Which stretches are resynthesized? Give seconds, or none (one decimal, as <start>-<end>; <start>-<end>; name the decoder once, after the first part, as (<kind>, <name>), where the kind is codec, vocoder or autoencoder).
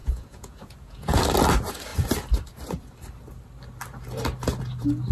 0.0-1.2 (vocoder, Vocos)